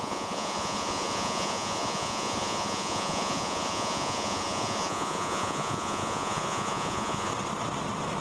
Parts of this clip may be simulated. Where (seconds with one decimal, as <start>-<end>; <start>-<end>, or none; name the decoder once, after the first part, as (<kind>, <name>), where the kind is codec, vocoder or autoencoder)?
0.0-7.3 (vocoder, Vocos)